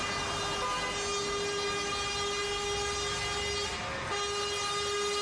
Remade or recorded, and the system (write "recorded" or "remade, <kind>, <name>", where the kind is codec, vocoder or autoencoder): recorded